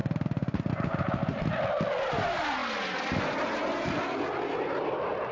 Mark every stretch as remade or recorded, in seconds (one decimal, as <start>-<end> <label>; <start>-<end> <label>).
0.0-2.1 recorded; 2.1-2.6 remade; 2.6-4.6 recorded; 4.6-5.3 remade